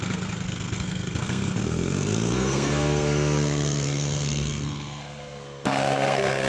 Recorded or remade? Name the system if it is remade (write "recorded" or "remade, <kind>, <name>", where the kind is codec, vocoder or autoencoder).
remade, codec, SNAC